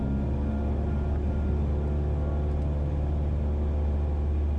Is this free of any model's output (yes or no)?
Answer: yes